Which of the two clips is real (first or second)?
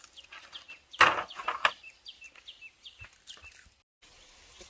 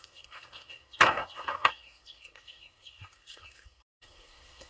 first